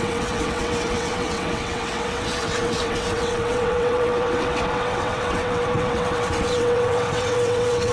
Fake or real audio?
fake